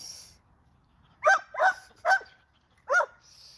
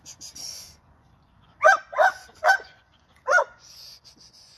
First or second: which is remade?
second